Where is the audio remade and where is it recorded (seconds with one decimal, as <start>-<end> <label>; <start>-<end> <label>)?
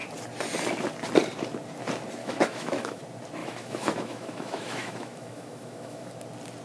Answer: 0.0-2.2 recorded; 2.2-3.0 remade; 3.0-3.4 recorded; 3.4-6.1 remade; 6.1-6.6 recorded